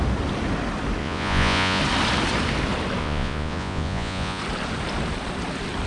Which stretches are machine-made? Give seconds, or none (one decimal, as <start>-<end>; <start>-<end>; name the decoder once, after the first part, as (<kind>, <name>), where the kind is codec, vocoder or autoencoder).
1.0-1.8 (vocoder, Vocos); 3.0-4.4

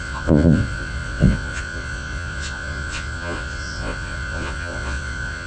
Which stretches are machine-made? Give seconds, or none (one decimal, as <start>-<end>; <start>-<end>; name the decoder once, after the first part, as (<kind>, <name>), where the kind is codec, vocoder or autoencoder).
0.0-5.5 (vocoder, Vocos)

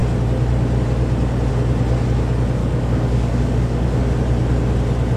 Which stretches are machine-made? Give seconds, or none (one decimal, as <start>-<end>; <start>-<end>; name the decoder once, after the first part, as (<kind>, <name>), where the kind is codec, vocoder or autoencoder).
2.6-4.0 (codec, DAC)

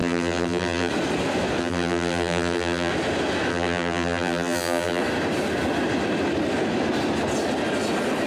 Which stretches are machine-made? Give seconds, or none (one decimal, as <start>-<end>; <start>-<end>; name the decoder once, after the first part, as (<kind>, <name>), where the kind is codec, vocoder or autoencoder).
0.0-0.9 (vocoder, BigVGAN v2); 1.6-2.9; 3.5-5.0

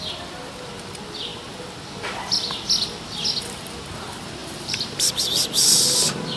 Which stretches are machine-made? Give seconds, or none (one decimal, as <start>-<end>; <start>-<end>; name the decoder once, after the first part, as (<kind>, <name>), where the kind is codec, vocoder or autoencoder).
4.4-5.2 (vocoder, BigVGAN v2)

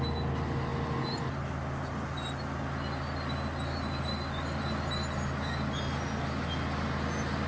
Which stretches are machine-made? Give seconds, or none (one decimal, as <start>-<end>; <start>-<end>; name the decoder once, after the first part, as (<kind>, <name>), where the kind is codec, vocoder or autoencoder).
none

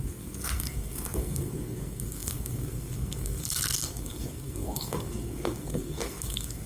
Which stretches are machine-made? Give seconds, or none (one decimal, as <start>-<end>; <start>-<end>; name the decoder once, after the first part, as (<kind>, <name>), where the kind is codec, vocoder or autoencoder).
0.0-6.7 (codec, SNAC)

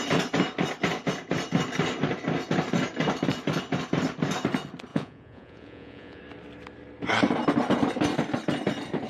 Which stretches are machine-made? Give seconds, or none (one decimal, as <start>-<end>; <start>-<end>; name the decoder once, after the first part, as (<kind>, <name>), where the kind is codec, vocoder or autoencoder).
4.9-6.2 (vocoder, Vocos)